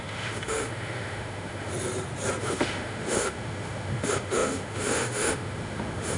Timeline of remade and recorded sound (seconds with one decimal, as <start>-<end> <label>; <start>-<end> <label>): 0.0-1.7 remade; 1.7-2.4 recorded; 2.4-6.2 remade